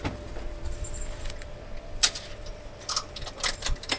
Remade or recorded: remade